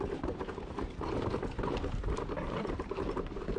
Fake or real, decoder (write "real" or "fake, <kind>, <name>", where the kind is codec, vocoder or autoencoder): fake, vocoder, BigVGAN v2